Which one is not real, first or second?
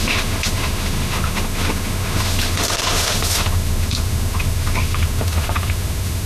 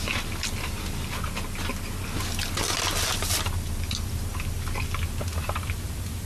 first